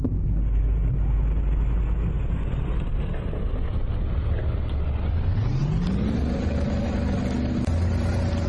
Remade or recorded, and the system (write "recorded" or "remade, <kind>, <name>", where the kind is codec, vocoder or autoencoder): recorded